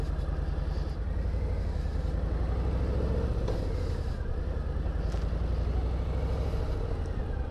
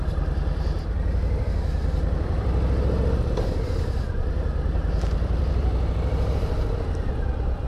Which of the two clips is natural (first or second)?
first